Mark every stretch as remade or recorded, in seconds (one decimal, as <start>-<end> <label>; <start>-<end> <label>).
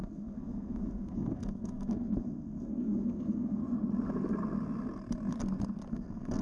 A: 0.0-3.6 remade; 3.6-5.9 recorded; 5.9-6.4 remade